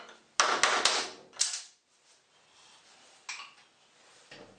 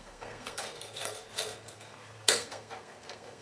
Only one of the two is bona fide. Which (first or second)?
first